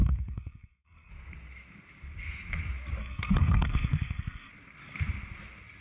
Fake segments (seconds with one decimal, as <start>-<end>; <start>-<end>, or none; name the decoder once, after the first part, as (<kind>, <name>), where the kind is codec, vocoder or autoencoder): 0.0-1.1 (codec, SNAC); 3.0-4.5